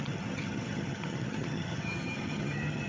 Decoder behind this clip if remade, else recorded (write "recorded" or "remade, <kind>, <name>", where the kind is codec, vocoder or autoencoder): remade, vocoder, HiFi-GAN